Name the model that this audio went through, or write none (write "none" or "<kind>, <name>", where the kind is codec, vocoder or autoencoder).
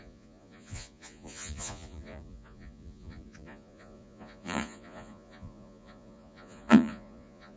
vocoder, Vocos